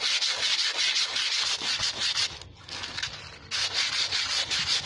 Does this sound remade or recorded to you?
recorded